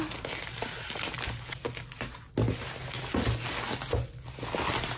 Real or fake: real